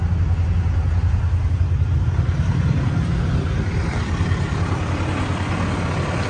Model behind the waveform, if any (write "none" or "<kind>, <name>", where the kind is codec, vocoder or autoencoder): none